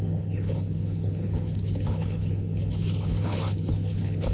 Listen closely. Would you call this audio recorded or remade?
remade